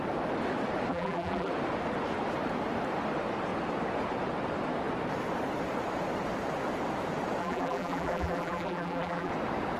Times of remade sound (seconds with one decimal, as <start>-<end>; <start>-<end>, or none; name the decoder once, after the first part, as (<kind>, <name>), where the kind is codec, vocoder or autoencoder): 0.9-1.5 (vocoder, BigVGAN v2); 7.4-9.3